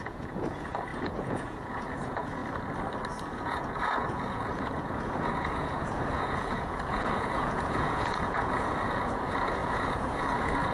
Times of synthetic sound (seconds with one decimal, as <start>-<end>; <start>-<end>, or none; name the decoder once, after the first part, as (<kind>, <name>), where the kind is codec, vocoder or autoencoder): 0.0-2.4 (vocoder, Vocos); 3.3-10.7